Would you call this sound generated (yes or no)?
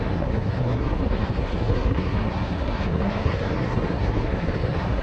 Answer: yes